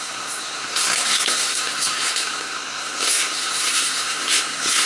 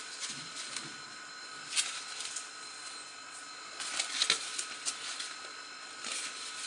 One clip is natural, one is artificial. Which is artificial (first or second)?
first